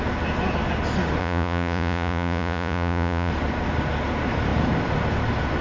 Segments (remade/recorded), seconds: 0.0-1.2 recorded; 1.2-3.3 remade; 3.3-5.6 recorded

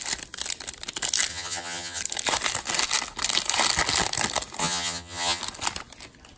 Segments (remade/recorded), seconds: 0.0-1.3 recorded; 1.3-2.0 remade; 2.0-4.6 recorded; 4.6-5.4 remade; 5.4-6.4 recorded

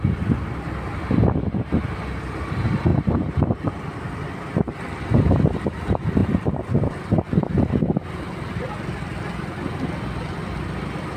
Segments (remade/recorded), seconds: 0.0-2.9 recorded; 2.9-4.0 remade; 4.0-6.2 recorded; 6.2-6.9 remade; 6.9-11.2 recorded

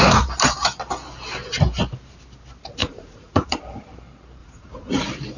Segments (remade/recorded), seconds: 0.0-2.8 recorded; 2.8-3.6 remade; 3.6-4.4 recorded; 4.4-5.0 remade; 5.0-5.4 recorded

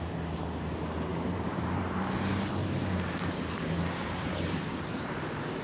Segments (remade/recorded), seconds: 0.0-1.1 recorded; 1.1-1.8 remade; 1.8-2.6 recorded; 2.6-5.6 remade

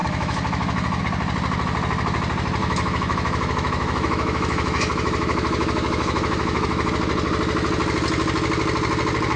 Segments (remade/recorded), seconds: 0.0-1.0 remade; 1.0-2.6 recorded; 2.6-6.9 remade; 6.9-9.4 recorded